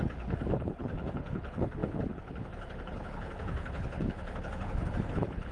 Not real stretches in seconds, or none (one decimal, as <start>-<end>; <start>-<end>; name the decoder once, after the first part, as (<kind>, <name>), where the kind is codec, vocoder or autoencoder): 0.0-5.5 (codec, HILCodec)